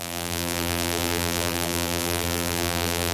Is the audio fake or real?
fake